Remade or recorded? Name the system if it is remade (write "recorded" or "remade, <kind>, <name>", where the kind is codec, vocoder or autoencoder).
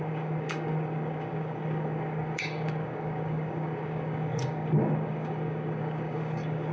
remade, codec, DAC